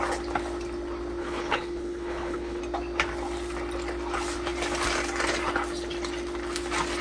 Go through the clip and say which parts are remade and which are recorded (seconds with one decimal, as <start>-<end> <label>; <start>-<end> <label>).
0.0-1.2 recorded; 1.2-2.6 remade; 2.6-7.0 recorded